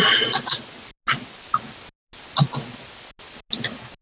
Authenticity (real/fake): real